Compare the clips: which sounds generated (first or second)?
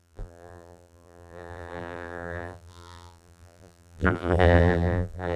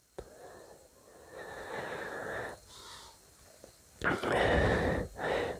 first